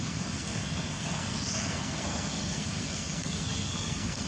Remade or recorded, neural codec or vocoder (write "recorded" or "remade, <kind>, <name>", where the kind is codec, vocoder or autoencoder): remade, codec, SNAC